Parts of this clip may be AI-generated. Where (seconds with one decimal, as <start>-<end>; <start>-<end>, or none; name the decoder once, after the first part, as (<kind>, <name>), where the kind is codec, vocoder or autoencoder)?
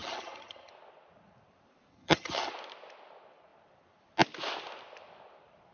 0.0-0.7 (vocoder, HiFi-GAN); 1.9-2.5